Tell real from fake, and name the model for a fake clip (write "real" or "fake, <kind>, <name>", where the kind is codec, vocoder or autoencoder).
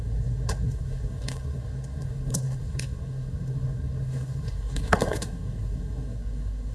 fake, codec, SNAC